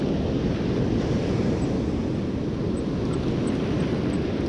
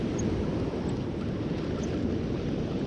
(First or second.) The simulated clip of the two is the second